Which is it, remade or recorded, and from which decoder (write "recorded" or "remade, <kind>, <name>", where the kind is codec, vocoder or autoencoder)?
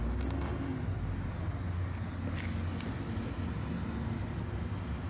recorded